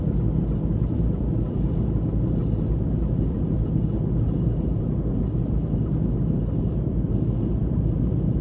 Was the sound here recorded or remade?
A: recorded